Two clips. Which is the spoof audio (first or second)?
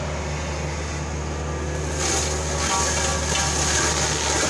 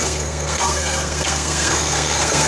second